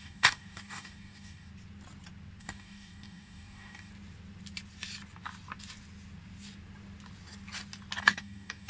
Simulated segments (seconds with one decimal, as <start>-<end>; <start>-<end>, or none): 0.0-1.5; 2.4-3.9; 8.0-8.7